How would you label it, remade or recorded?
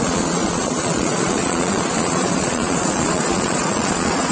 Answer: remade